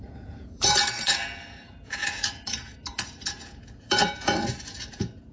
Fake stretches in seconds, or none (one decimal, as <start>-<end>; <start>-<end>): 0.0-5.3